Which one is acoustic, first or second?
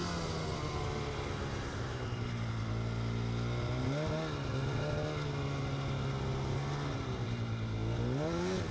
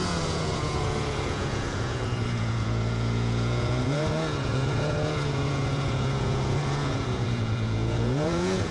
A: first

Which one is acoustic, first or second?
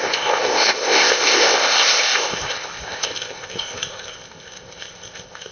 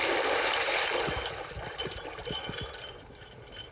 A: second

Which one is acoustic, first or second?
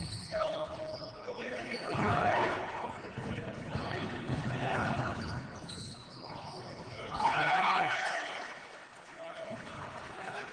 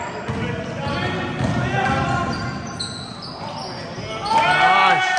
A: second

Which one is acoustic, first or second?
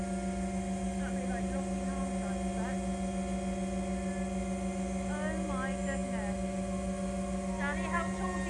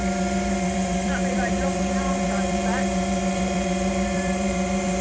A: first